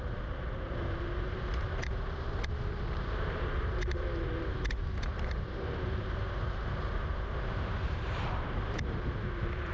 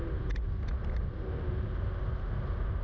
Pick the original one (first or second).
second